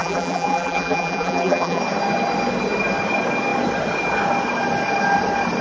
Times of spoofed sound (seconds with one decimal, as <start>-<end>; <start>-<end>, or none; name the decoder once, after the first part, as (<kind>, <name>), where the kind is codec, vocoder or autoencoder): 0.0-1.8 (vocoder, BigVGAN v2)